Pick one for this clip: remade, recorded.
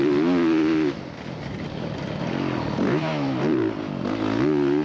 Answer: recorded